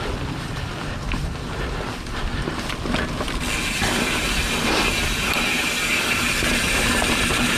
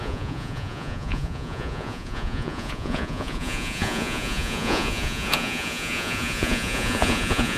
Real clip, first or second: first